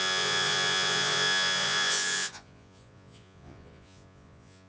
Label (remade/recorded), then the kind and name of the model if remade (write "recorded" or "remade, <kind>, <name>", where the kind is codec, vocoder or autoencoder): remade, vocoder, Vocos